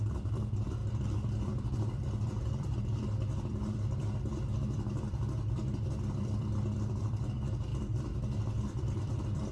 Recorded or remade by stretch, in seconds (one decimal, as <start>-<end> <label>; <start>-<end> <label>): 0.0-9.5 remade